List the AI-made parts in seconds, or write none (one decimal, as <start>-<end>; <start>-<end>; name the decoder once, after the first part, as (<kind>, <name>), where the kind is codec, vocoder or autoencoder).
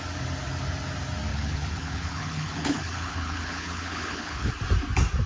1.3-4.5 (codec, HILCodec)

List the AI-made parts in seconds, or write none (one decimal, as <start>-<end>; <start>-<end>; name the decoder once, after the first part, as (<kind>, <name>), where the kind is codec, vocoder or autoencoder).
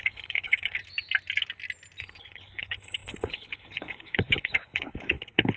0.0-0.8 (codec, HILCodec); 2.0-5.6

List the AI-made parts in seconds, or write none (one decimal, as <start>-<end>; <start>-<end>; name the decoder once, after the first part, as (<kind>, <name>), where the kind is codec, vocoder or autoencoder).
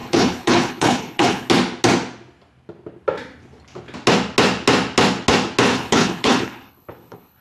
0.0-1.5 (codec, HILCodec); 5.7-7.4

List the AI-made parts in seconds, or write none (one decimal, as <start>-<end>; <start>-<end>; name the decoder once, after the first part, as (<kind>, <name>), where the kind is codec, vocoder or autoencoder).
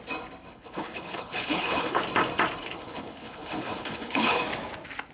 0.5-2.0 (codec, HILCodec); 2.6-4.4